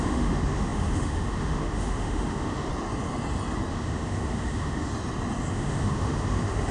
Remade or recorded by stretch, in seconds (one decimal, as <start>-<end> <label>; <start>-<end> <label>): 0.0-2.7 remade; 2.7-3.7 recorded; 3.7-4.9 remade; 4.9-5.5 recorded; 5.5-6.7 remade